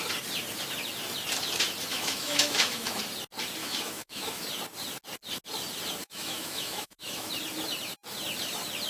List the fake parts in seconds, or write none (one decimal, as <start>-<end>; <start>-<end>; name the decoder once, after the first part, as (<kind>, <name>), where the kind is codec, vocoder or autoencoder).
1.9-3.0 (autoencoder, DAC-VAE); 3.6-4.4; 6.0-7.3

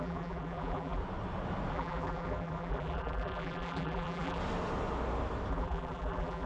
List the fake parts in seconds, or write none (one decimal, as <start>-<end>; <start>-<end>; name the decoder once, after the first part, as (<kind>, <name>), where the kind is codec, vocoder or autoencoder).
0.0-1.0 (vocoder, BigVGAN v2); 1.7-4.4; 5.5-6.5

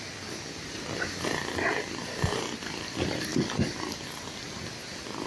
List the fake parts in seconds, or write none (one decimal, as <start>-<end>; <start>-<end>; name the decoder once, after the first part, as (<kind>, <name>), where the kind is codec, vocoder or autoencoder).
none

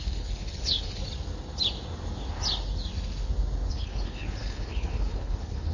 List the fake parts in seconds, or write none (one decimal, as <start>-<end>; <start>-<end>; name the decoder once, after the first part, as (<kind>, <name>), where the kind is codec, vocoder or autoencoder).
0.0-1.0 (codec, HILCodec); 3.7-5.7

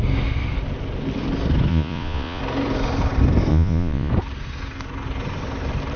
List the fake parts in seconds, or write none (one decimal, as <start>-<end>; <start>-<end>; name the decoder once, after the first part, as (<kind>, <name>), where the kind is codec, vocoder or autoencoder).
1.7-2.4 (vocoder, Vocos); 3.5-4.1

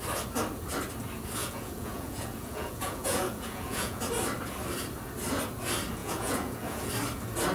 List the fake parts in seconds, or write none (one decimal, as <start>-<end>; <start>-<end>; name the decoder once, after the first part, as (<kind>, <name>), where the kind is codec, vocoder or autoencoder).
1.4-4.0 (vocoder, Vocos); 6.0-6.9